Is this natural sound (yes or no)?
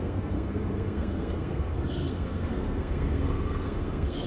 no